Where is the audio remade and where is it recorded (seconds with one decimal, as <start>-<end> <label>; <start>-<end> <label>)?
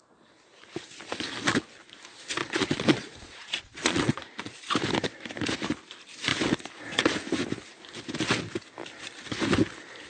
0.0-2.4 recorded; 2.4-4.7 remade; 4.7-10.1 recorded